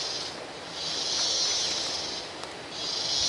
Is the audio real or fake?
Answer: real